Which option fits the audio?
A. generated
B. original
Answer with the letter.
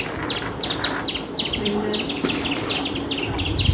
B